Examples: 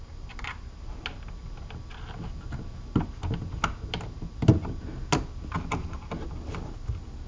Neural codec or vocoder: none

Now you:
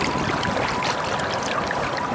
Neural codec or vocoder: none